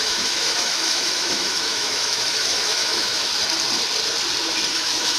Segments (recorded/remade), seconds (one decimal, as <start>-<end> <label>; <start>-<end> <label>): 0.0-3.3 remade; 3.3-4.7 recorded; 4.7-5.2 remade